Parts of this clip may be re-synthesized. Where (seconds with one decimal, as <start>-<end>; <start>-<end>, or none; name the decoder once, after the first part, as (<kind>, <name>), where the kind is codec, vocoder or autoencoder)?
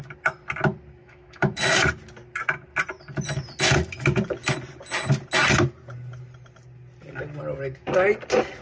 1.0-1.6 (autoencoder, DAC-VAE)